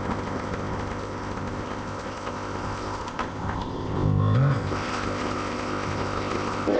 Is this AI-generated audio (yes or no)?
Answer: yes